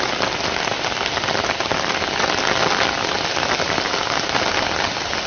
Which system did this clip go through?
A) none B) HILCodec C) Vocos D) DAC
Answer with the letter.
A